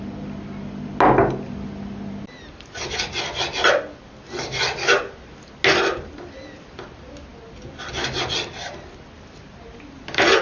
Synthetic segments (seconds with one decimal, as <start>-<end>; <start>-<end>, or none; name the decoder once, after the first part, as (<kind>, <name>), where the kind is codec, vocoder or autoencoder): none